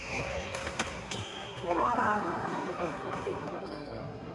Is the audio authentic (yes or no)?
no